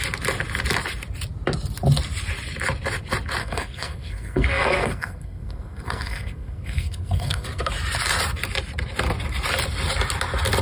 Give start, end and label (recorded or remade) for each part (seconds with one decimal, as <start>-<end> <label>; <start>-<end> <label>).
0.0-3.4 recorded; 3.4-7.7 remade; 7.7-10.6 recorded